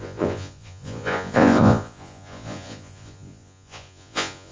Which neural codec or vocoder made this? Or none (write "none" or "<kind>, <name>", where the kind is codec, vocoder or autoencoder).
vocoder, Vocos